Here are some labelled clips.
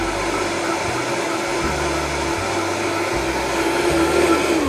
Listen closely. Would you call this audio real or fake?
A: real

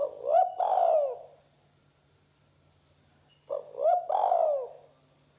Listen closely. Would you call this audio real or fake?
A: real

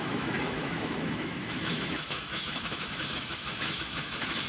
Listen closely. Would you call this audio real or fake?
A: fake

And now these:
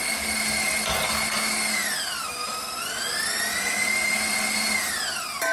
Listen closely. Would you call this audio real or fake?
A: real